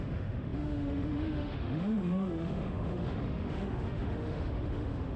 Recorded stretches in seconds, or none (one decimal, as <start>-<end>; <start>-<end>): none